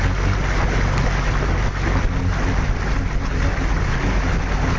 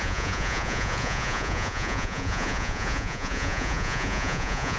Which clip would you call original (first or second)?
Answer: first